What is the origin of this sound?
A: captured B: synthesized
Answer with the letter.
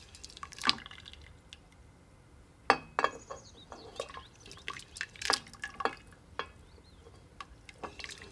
A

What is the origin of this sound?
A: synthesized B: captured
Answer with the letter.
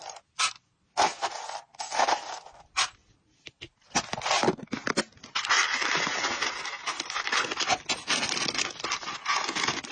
B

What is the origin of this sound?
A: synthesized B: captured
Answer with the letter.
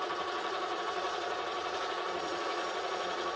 A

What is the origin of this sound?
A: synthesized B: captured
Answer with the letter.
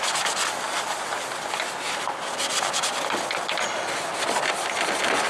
B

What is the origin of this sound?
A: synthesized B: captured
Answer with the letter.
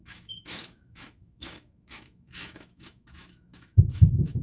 A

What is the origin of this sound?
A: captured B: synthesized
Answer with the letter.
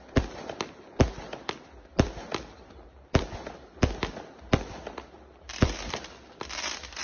A